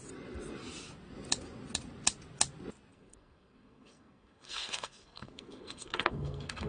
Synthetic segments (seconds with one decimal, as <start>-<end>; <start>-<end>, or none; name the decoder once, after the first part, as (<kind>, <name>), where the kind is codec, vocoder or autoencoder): 2.9-6.7 (codec, SNAC)